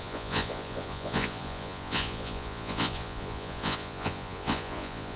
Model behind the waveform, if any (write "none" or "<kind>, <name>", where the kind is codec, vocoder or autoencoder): vocoder, Vocos